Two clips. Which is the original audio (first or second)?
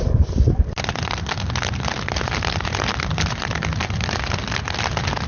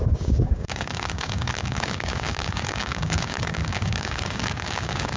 first